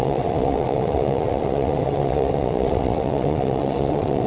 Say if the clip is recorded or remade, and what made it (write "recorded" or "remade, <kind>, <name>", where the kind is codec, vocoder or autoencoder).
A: remade, vocoder, WaveNeXt